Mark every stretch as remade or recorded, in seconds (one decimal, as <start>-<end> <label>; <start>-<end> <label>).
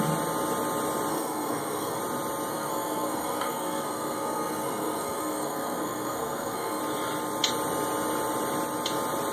0.0-1.1 recorded; 1.1-2.0 remade; 2.0-2.5 recorded; 2.5-6.8 remade; 6.8-9.3 recorded